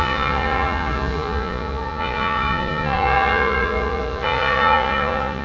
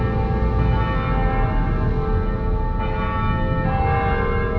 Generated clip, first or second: first